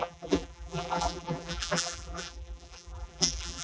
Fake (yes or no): yes